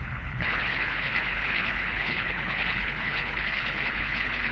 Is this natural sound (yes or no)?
no